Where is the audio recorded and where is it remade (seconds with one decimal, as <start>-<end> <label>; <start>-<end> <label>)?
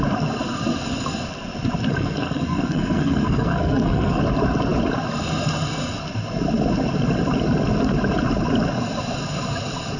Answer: 0.0-1.9 recorded; 1.9-4.2 remade; 4.2-10.0 recorded